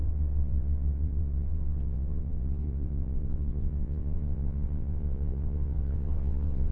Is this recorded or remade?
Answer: remade